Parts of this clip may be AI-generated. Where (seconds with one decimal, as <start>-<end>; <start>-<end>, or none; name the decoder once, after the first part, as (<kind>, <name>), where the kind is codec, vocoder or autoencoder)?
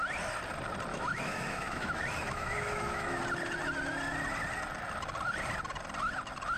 0.9-3.2 (autoencoder, DAC-VAE)